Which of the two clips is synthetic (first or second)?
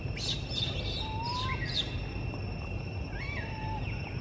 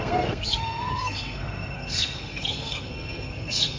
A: second